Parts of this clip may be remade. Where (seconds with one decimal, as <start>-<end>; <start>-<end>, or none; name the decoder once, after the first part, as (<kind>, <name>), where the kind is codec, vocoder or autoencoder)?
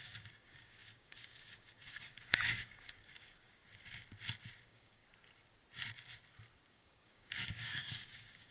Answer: 0.0-3.6 (codec, DAC); 4.6-5.0; 6.7-8.5